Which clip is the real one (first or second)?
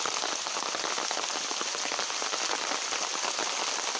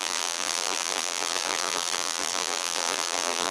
first